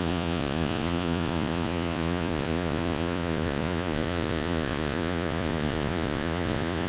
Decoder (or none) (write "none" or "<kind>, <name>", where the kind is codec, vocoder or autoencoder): vocoder, Vocos